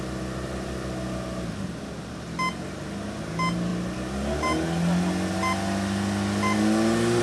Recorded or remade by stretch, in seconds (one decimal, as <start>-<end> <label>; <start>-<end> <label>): 0.0-7.2 recorded